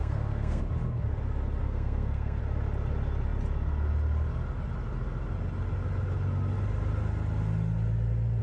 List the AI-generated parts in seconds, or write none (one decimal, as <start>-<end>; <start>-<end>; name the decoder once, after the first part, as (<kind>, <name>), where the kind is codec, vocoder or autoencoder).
0.0-0.6 (codec, SNAC); 1.6-2.4